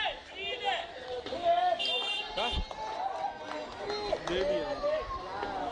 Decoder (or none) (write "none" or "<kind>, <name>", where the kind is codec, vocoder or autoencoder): none